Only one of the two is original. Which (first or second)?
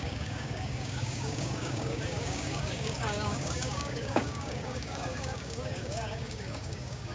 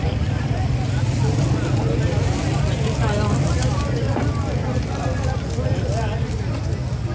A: second